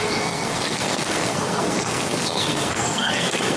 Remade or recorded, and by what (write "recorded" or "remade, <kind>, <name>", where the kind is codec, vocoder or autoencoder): remade, codec, SNAC